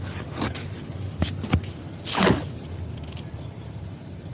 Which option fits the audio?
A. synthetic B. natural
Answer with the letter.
B